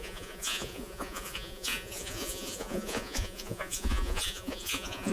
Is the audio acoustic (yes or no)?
no